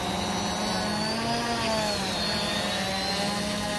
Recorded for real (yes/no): yes